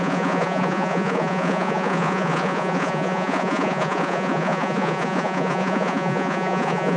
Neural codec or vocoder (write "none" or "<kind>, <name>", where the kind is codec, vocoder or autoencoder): vocoder, Vocos